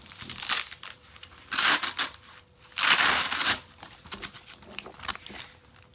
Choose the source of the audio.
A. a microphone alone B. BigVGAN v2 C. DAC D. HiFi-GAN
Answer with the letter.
B